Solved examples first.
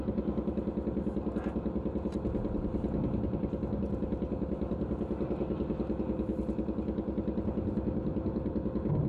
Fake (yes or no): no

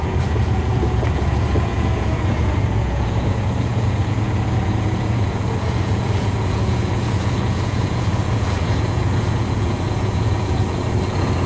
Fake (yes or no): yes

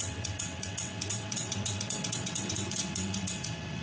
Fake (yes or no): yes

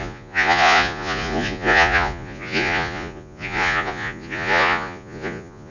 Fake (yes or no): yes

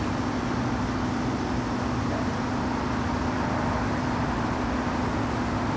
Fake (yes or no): no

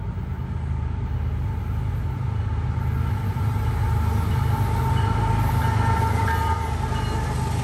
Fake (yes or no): no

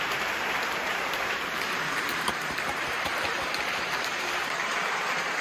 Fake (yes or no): yes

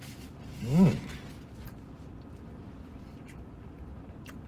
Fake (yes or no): no